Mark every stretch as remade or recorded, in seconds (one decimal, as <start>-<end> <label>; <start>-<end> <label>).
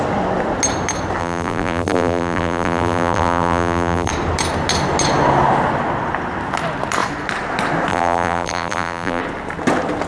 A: 0.0-1.2 recorded; 1.2-4.1 remade; 4.1-7.9 recorded; 7.9-9.2 remade; 9.2-10.1 recorded